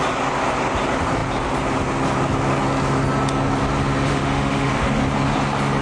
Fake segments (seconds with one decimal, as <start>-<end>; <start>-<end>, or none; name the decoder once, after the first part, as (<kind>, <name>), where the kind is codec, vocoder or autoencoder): 4.1-4.7 (autoencoder, DAC-VAE)